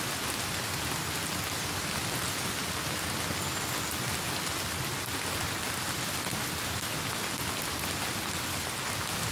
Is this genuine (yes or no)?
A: yes